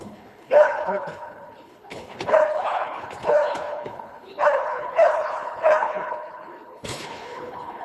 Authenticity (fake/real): fake